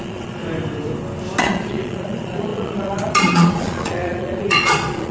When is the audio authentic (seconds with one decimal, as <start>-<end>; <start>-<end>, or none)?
0.4-1.4